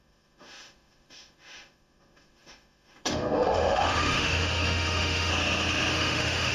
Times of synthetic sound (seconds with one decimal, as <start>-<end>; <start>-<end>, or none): 0.0-5.3; 5.9-6.5